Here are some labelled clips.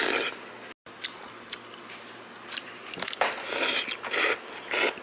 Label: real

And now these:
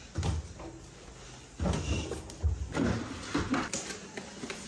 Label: real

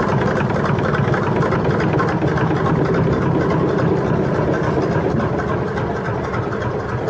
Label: real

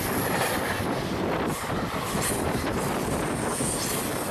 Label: fake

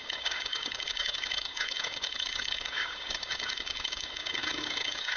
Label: fake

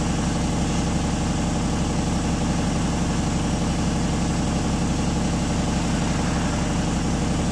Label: real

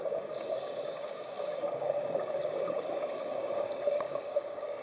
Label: fake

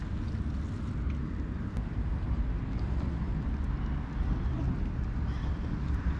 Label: real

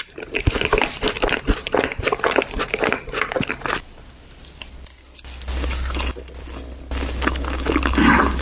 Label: real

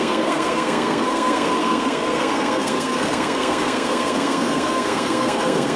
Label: fake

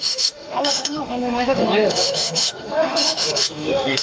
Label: fake